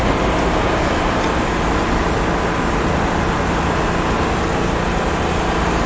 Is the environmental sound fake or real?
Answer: real